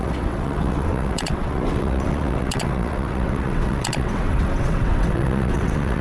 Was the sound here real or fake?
fake